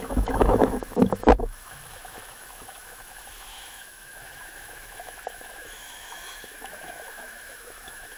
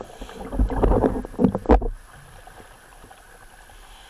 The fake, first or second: first